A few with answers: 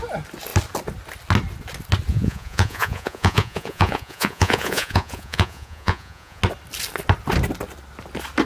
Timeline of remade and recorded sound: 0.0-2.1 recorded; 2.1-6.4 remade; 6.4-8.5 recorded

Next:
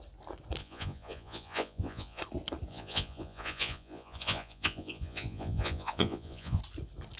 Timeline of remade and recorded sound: 0.0-0.6 recorded; 0.6-2.2 remade; 2.2-2.7 recorded; 2.7-6.6 remade; 6.6-7.2 recorded